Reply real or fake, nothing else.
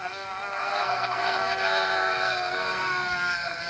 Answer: fake